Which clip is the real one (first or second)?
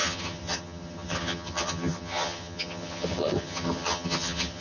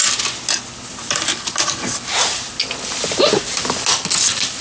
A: second